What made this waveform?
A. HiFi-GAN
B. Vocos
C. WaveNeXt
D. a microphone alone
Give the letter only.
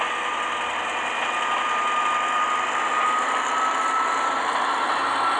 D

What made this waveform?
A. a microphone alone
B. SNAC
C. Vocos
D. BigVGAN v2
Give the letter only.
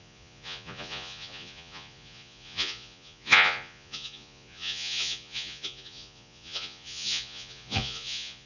C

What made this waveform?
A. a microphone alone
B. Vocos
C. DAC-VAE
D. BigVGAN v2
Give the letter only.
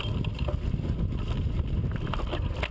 A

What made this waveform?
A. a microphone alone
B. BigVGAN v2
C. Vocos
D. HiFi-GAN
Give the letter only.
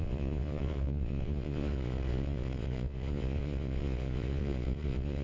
C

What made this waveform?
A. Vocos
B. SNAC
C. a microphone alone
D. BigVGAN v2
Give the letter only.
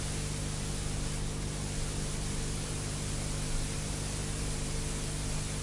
C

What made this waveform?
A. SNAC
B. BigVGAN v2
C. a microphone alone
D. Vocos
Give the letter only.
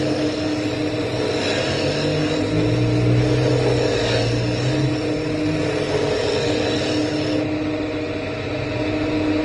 C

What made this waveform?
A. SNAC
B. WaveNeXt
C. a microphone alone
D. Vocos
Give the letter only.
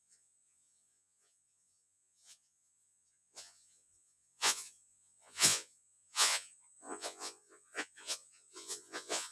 D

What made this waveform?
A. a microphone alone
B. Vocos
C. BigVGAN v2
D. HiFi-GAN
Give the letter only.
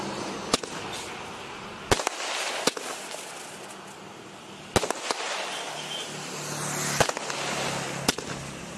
A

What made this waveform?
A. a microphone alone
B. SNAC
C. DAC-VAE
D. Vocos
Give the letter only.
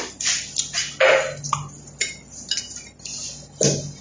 A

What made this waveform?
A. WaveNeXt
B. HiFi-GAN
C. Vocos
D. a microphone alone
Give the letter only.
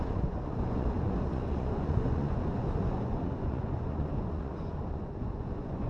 C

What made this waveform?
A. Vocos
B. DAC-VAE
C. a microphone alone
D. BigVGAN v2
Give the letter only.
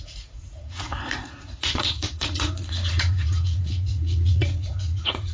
A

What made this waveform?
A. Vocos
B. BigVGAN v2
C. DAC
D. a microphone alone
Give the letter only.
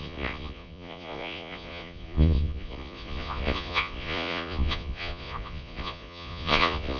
A